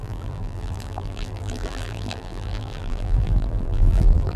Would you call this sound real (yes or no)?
no